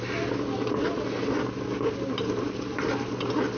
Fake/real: real